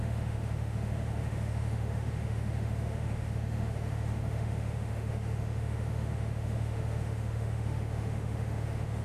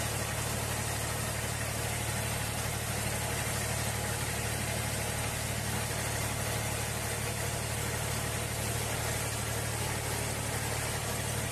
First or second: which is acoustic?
second